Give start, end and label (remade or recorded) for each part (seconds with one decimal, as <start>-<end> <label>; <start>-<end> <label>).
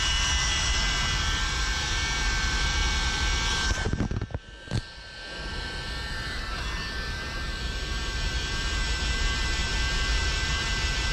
0.0-11.1 recorded